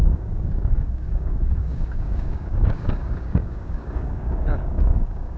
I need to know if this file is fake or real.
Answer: fake